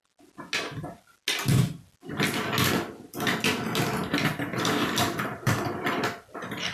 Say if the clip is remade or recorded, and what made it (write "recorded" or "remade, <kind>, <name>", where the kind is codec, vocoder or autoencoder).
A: recorded